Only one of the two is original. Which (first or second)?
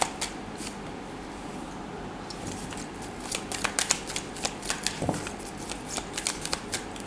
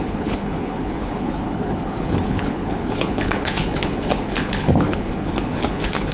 first